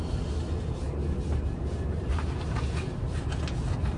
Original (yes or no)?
yes